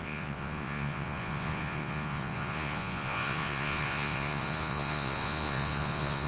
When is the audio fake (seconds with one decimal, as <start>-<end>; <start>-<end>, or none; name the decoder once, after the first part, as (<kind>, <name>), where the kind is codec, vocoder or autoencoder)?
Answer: 0.0-6.3 (vocoder, Vocos)